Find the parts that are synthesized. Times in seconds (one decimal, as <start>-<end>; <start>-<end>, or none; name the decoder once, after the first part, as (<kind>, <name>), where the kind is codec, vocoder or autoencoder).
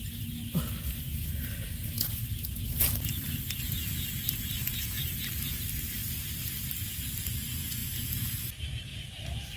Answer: none